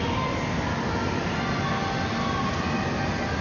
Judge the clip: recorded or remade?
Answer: recorded